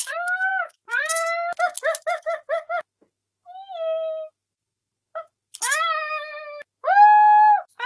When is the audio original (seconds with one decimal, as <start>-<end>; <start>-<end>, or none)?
none